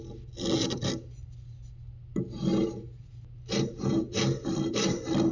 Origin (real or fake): real